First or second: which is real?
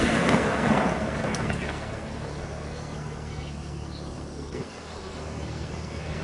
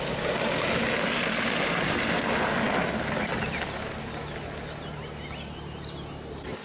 second